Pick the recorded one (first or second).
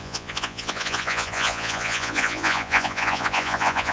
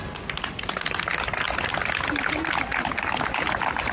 second